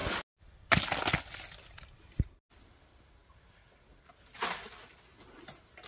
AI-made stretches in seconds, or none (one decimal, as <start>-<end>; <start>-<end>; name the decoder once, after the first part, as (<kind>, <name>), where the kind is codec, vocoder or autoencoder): none